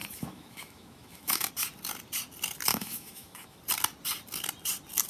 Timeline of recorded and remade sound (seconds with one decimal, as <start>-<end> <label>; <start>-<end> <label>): 0.0-1.5 remade; 1.5-2.7 recorded; 2.7-3.6 remade; 3.6-5.1 recorded